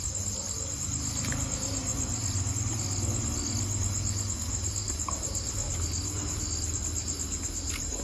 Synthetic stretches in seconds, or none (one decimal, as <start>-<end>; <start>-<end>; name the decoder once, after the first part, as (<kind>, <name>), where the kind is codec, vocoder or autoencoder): none